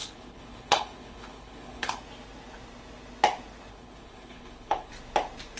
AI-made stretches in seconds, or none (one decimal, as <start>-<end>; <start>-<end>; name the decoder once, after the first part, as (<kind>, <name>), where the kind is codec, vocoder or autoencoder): 0.0-2.0 (codec, HILCodec); 3.7-4.9